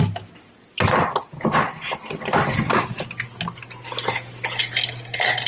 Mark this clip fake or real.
real